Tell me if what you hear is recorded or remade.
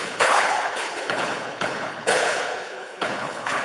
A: remade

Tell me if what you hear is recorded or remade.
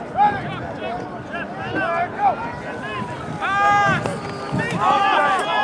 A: recorded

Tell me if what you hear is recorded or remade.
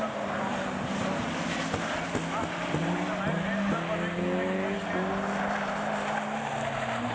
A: recorded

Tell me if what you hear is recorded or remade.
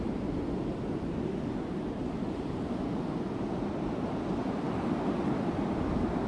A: recorded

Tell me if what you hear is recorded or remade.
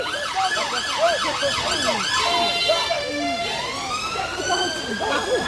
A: recorded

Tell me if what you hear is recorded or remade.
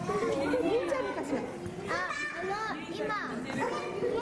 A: recorded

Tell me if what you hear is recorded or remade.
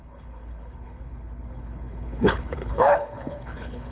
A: remade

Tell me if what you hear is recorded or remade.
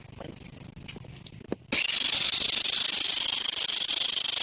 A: recorded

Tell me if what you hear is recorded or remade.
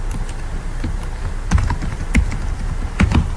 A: recorded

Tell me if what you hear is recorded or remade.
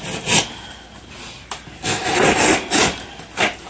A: recorded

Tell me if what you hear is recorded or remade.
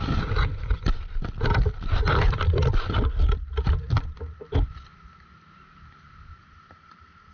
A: recorded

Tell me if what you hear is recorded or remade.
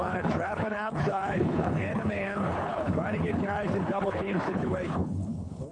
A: remade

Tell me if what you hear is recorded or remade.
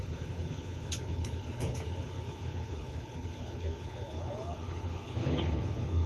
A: remade